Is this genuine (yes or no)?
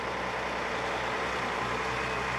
yes